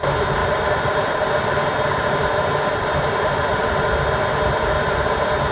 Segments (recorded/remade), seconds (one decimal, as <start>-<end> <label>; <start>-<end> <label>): 0.0-5.5 recorded